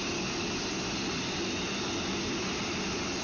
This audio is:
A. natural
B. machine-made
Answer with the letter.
A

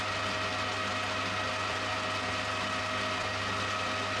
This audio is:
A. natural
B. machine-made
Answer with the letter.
A